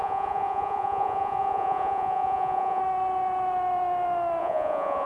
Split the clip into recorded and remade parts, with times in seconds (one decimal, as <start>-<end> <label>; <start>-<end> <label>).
0.0-2.8 remade; 2.8-4.4 recorded; 4.4-5.1 remade